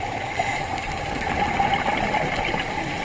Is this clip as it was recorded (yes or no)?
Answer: yes